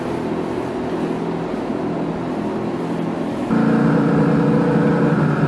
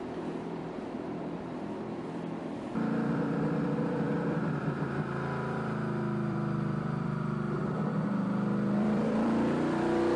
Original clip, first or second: first